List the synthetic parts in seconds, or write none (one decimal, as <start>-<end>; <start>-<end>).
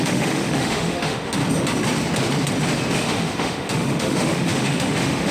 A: 0.0-1.4; 2.9-5.3